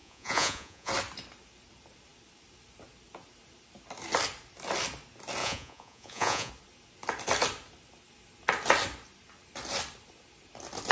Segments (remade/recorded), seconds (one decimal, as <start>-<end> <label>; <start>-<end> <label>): 0.0-0.9 remade; 0.9-5.4 recorded; 5.4-6.5 remade; 6.5-10.9 recorded